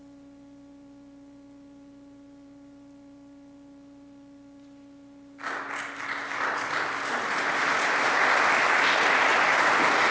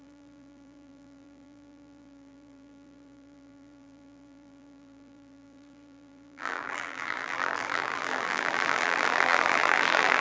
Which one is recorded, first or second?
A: first